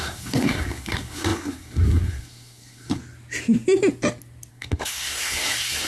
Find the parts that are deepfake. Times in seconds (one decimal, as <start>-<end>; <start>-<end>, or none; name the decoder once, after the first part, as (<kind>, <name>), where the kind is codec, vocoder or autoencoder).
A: 0.0-3.0 (codec, SNAC); 4.5-5.9